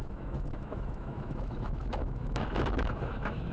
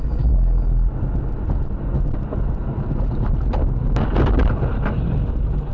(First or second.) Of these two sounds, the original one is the second